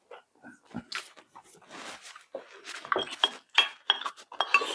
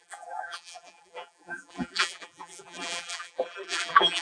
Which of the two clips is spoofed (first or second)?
second